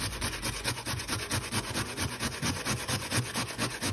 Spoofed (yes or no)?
yes